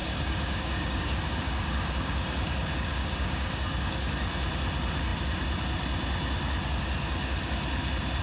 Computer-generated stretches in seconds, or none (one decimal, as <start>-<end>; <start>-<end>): 0.0-4.1